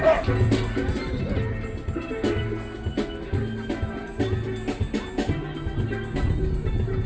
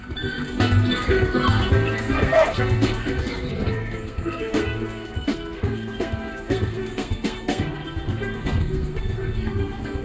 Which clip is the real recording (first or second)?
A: first